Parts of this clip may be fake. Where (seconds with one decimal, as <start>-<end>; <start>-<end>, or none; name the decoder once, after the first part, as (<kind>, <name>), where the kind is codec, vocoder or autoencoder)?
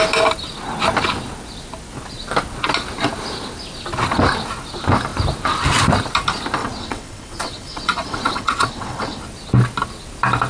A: 6.6-9.2 (vocoder, WaveNeXt)